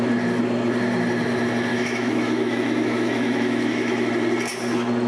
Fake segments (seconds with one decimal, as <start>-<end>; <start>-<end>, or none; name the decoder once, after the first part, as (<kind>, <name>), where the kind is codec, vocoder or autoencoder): 1.7-4.1 (autoencoder, DAC-VAE)